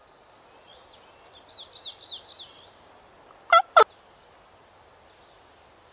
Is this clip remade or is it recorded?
recorded